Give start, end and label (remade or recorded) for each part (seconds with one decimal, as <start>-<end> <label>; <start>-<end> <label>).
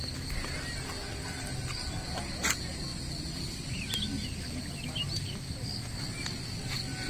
0.0-7.1 recorded